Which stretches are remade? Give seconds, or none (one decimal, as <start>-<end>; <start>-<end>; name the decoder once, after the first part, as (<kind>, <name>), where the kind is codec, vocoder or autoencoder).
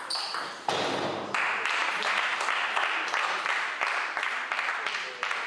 none